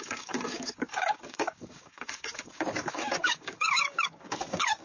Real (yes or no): no